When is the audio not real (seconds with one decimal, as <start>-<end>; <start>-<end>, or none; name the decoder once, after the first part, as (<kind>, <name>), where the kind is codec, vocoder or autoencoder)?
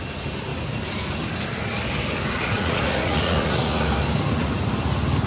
2.4-3.9 (vocoder, Vocos)